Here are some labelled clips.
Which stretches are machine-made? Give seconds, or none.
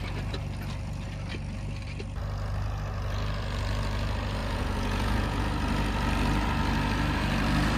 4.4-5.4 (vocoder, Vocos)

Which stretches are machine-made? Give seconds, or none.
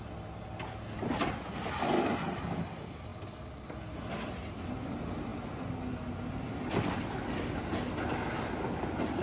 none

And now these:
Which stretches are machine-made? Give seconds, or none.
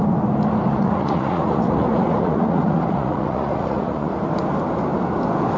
0.7-4.1 (vocoder, Vocos)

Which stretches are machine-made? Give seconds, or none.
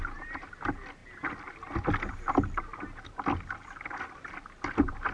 none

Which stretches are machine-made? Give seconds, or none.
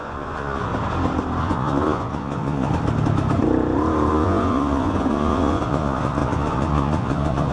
0.0-0.7 (vocoder, Vocos); 1.4-2.7; 4.1-7.5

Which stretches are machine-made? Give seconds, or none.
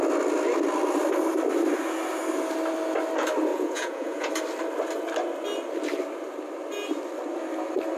3.5-4.3 (vocoder, Vocos)